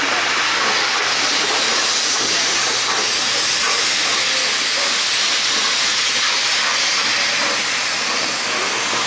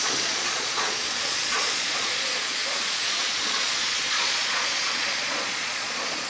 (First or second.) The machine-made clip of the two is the second